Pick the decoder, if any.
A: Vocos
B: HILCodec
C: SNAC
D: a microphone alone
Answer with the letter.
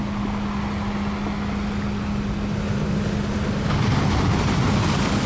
D